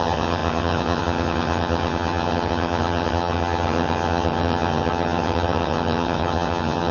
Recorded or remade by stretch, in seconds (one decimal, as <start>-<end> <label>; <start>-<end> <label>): 0.0-6.9 remade